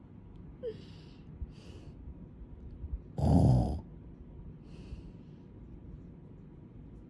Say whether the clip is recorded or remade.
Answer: recorded